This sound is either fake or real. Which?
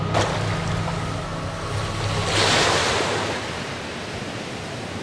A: real